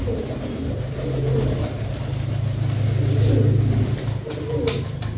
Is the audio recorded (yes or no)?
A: yes